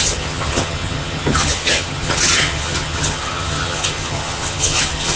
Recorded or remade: remade